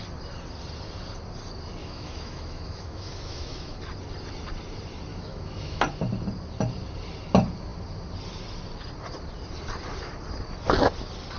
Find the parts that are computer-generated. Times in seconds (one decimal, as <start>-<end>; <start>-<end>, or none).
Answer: 1.8-3.8; 5.1-5.8